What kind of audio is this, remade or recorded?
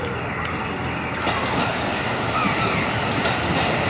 recorded